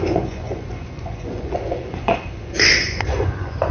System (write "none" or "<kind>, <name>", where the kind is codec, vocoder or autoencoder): vocoder, Vocos